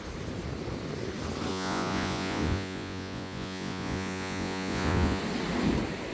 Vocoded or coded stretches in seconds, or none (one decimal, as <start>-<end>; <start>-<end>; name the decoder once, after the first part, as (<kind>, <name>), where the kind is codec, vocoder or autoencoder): 1.5-5.2 (vocoder, Vocos)